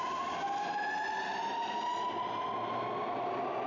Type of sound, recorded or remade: recorded